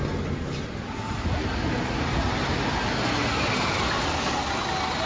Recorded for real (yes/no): yes